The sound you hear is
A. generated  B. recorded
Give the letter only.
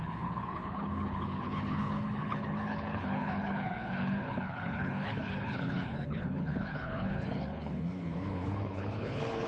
A